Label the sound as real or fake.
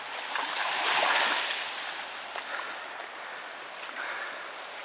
real